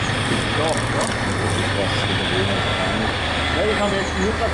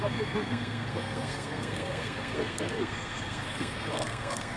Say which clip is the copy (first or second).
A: second